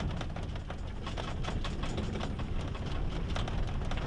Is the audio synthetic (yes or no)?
no